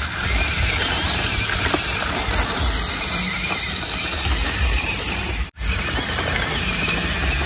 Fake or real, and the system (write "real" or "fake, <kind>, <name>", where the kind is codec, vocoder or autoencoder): real